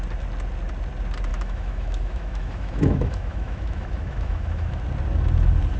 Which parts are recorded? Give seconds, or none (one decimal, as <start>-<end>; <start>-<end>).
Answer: 0.0-1.3; 4.8-5.8